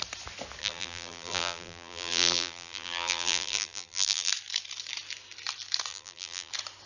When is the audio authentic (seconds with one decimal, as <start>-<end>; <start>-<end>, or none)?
0.0-0.6; 4.3-5.9; 6.5-6.9

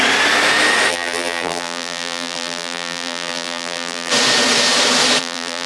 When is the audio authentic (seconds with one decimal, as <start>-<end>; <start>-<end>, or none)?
0.0-0.9; 4.1-5.2

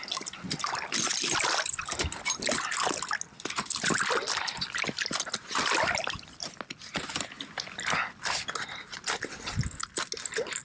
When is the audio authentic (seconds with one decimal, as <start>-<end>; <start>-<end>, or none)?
0.0-10.6

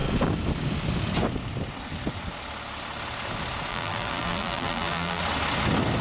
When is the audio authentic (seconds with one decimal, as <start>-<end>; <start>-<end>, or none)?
0.0-3.7; 5.2-6.0

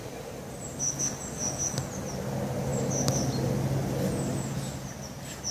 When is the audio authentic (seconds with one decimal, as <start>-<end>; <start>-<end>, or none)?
0.0-5.5